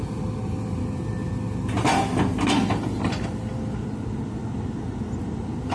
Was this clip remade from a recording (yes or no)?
no